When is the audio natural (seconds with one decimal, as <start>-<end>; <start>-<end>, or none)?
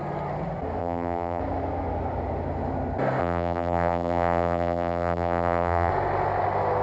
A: 0.0-0.8; 1.4-3.2; 5.9-6.8